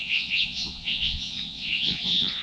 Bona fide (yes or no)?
no